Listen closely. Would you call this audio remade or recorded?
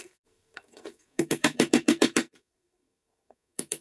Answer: remade